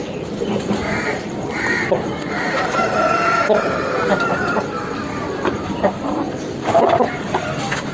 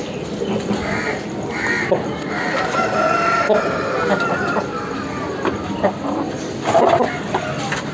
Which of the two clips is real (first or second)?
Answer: second